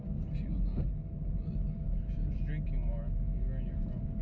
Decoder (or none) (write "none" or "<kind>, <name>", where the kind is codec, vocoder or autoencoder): none